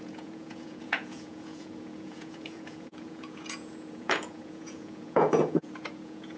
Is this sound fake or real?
fake